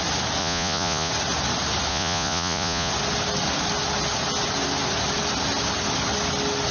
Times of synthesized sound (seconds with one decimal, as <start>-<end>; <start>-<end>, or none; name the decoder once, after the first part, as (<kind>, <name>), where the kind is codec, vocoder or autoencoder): 0.4-1.1 (vocoder, Vocos); 1.9-2.9